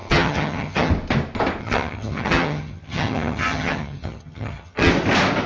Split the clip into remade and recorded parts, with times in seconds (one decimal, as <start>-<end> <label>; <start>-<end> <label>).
0.0-0.9 remade; 0.9-1.6 recorded; 1.6-4.9 remade; 4.9-5.5 recorded